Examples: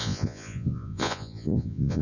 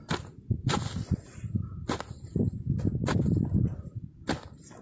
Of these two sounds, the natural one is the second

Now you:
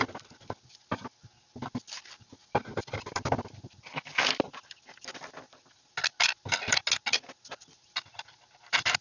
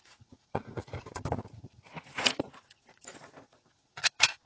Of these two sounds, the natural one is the first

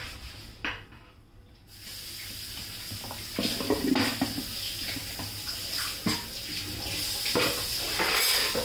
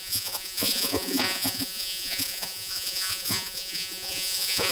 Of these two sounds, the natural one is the first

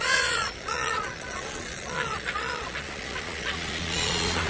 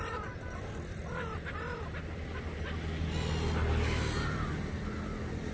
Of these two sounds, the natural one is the second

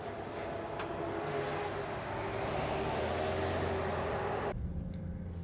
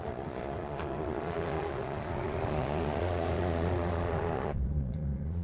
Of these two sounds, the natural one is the first